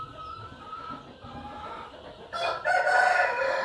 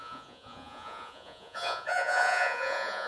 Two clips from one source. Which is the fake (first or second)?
second